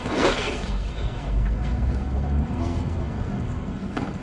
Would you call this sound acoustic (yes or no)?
no